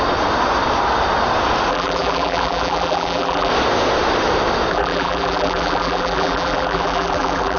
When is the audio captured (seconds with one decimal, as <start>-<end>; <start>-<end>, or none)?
0.0-1.7; 3.5-4.7